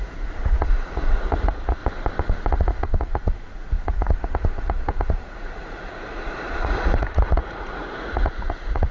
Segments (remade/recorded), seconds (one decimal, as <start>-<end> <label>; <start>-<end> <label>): 0.0-1.8 remade; 1.8-2.5 recorded; 2.5-8.9 remade